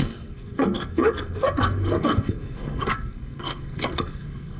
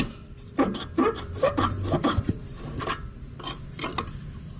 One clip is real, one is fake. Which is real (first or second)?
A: second